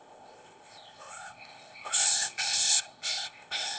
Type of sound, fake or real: fake